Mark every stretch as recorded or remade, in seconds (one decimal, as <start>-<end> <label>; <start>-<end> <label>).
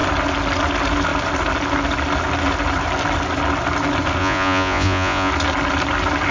0.0-4.2 recorded; 4.2-5.3 remade; 5.3-6.3 recorded